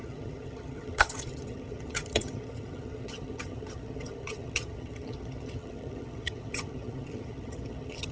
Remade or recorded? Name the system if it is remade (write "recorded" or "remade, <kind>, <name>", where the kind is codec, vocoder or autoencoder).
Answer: remade, vocoder, HiFi-GAN